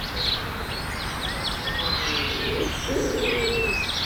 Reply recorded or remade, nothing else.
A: recorded